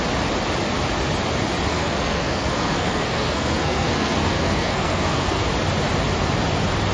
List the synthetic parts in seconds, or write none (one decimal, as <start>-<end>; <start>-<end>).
1.7-5.4